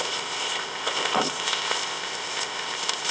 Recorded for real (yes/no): no